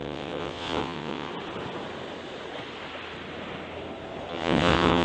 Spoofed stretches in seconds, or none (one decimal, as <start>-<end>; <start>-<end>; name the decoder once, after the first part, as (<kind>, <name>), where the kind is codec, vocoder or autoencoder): 0.0-1.3 (vocoder, WaveNeXt); 4.3-5.0